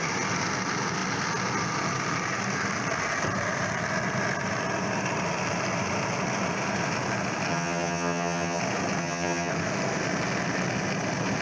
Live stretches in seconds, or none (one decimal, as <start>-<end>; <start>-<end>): 0.0-7.5; 8.6-9.0; 9.5-11.4